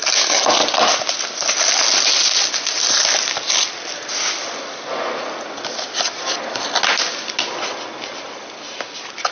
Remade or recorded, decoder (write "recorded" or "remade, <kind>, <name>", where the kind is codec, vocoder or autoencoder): recorded